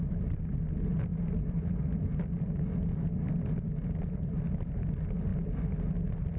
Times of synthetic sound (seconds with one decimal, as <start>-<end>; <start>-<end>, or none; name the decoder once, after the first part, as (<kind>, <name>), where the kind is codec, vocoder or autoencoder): none